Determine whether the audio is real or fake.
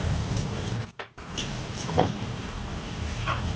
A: fake